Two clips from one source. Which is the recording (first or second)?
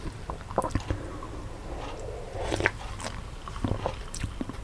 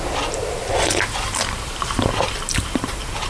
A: first